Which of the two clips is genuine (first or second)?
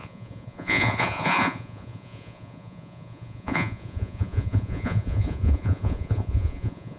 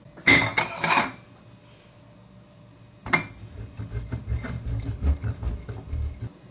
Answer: second